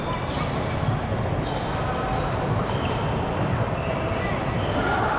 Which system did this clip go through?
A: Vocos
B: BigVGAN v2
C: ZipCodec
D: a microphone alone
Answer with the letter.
D